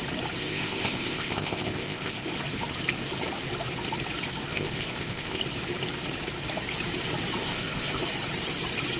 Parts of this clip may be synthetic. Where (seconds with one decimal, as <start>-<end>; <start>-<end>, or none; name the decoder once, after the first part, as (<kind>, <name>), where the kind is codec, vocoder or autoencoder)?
0.4-2.3 (codec, ZipCodec); 4.5-5.4; 7.4-8.0

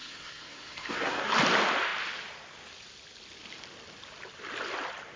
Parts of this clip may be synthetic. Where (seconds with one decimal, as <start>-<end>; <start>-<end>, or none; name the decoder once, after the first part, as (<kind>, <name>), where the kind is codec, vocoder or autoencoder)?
0.0-1.3 (codec, SNAC)

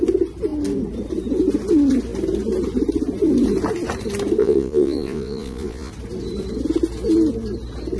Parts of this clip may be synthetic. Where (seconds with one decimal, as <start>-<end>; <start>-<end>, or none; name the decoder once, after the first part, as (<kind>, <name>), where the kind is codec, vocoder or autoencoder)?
4.4-5.9 (vocoder, Vocos)

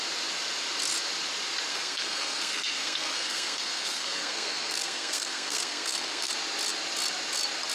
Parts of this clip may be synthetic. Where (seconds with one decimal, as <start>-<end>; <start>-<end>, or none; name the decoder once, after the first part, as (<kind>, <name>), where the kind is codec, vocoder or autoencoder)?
1.7-6.3 (codec, SNAC)